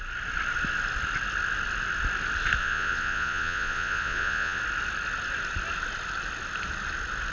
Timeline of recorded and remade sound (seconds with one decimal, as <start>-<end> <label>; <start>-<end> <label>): 0.0-2.6 recorded; 2.6-4.6 remade; 4.6-7.3 recorded